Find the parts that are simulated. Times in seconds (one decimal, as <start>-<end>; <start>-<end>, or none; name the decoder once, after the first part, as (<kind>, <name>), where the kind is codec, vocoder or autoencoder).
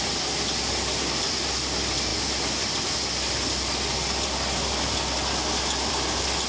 none